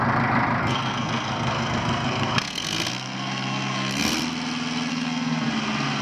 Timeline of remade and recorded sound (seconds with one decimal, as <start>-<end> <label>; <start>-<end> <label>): 0.0-0.6 recorded; 0.6-4.1 remade; 4.1-4.9 recorded; 4.9-5.5 remade; 5.5-6.0 recorded